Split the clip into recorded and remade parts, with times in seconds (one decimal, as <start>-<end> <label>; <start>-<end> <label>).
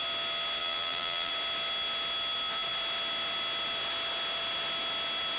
0.0-0.6 recorded; 0.6-1.3 remade; 1.3-5.4 recorded